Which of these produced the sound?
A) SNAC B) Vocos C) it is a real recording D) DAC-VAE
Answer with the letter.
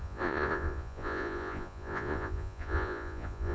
B